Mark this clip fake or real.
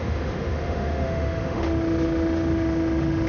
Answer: fake